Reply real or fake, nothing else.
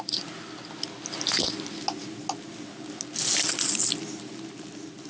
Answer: real